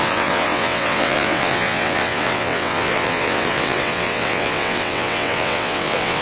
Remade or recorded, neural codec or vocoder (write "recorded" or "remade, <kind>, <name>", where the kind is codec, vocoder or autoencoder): remade, vocoder, WaveNeXt